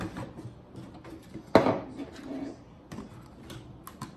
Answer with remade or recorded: recorded